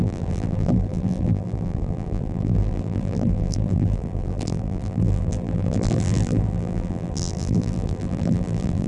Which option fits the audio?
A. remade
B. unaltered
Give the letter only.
A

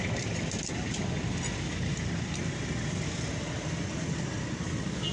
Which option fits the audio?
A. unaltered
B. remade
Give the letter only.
A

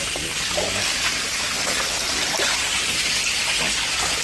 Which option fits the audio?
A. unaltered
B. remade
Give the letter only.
A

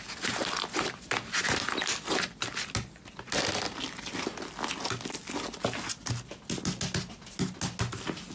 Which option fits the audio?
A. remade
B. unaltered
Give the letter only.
B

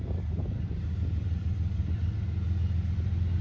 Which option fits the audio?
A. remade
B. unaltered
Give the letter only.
B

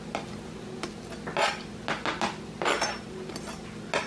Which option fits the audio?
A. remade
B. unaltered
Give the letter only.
B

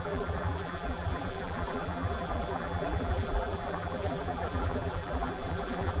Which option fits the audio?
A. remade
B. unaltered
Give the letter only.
A